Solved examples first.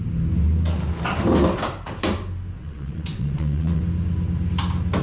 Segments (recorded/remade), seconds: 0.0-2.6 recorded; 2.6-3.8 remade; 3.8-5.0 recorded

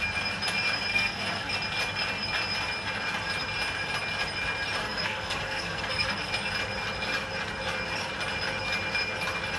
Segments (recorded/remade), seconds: 0.0-0.9 recorded; 0.9-1.5 remade; 1.5-4.8 recorded; 4.8-6.3 remade; 6.3-9.6 recorded